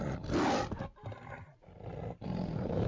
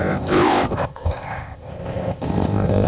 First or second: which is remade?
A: second